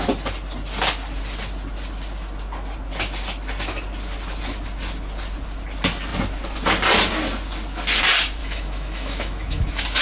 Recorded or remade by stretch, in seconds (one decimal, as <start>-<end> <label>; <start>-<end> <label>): 0.0-8.4 recorded; 8.4-10.0 remade